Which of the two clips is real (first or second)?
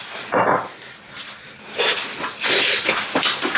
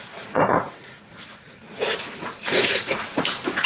first